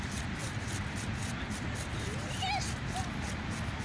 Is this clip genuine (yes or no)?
yes